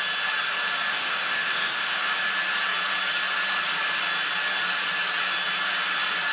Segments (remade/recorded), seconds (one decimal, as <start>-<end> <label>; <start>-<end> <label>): 0.0-0.9 recorded; 0.9-2.1 remade; 2.1-6.3 recorded